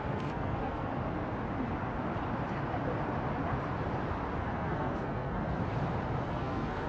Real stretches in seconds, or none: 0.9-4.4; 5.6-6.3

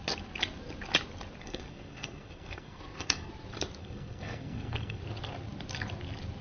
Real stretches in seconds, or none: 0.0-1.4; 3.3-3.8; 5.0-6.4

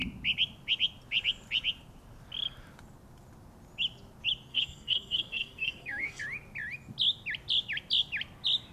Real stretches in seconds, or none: 0.0-4.5; 6.2-8.7

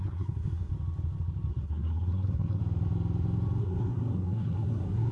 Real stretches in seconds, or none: 0.7-1.5; 2.6-3.6